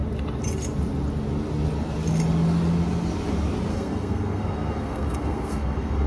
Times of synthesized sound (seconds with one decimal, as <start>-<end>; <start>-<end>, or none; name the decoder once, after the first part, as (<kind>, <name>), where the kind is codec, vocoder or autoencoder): 3.7-6.1 (codec, SNAC)